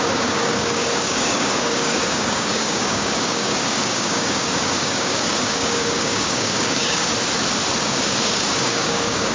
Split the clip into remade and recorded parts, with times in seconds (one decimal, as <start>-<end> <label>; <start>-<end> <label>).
0.0-7.1 remade; 7.1-7.8 recorded; 7.8-9.3 remade

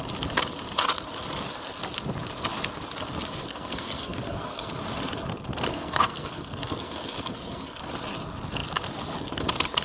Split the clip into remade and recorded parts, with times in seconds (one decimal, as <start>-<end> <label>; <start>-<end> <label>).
0.0-3.4 recorded; 3.4-4.7 remade; 4.7-5.7 recorded; 5.7-7.8 remade; 7.8-9.8 recorded

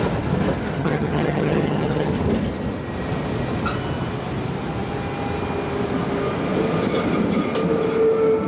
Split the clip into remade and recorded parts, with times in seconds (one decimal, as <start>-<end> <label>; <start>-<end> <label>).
0.0-0.8 recorded; 0.8-2.1 remade; 2.1-8.5 recorded

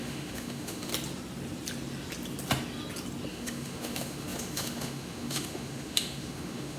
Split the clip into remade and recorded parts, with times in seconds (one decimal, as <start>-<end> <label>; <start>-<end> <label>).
0.0-0.9 remade; 0.9-3.3 recorded; 3.3-6.8 remade

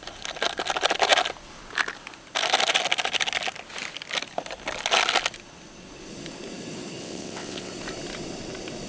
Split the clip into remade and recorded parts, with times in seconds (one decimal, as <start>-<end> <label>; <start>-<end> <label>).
0.0-7.0 recorded; 7.0-7.7 remade; 7.7-8.9 recorded

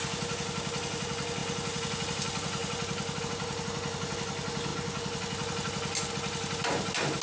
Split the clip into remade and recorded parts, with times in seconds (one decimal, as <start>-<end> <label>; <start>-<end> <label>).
0.0-7.2 recorded